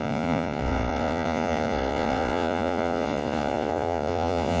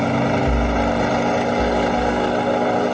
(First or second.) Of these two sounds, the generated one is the first